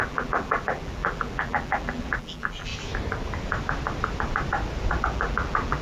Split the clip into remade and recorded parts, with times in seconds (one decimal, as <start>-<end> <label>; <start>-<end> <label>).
0.0-2.7 remade; 2.7-5.0 recorded; 5.0-5.8 remade